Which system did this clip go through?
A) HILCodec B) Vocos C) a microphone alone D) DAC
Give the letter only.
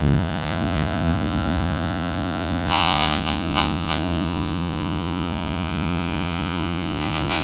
B